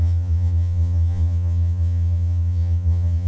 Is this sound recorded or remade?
remade